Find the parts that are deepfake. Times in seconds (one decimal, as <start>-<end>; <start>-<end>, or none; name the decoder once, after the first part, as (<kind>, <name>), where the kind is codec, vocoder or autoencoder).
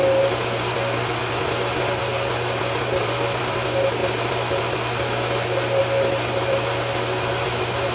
none